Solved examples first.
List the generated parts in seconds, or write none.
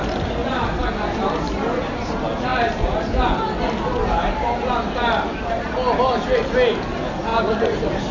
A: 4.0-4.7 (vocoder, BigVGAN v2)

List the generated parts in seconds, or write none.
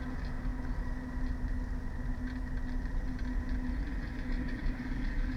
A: 4.0-5.4 (codec, DAC)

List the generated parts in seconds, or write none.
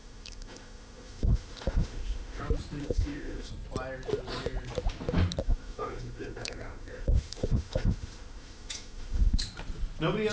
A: 0.0-2.4 (autoencoder, DAC-VAE); 2.8-3.5; 5.4-9.4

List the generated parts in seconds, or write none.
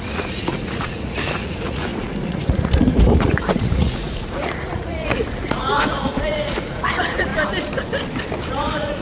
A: 0.0-7.3 (vocoder, Vocos); 8.5-9.0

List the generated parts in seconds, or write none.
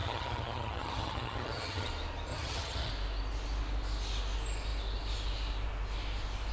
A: 0.0-1.9 (vocoder, HiFi-GAN); 2.3-2.9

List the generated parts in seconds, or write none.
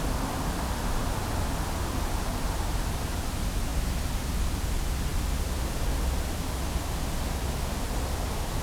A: none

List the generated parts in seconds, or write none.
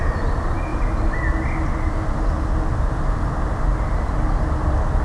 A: none